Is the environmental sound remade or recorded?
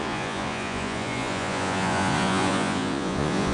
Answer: remade